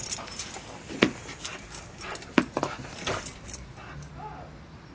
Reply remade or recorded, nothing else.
recorded